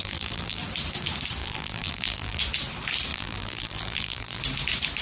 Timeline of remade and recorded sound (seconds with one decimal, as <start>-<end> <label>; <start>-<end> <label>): 0.0-0.6 remade; 0.6-1.4 recorded; 1.4-2.4 remade; 2.4-3.1 recorded; 3.1-4.4 remade; 4.4-5.0 recorded